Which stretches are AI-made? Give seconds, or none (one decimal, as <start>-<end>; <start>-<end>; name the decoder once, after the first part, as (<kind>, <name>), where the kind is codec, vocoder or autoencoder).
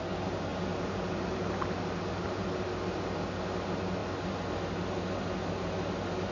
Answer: none